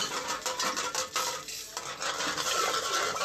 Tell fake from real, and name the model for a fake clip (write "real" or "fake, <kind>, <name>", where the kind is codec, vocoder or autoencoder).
real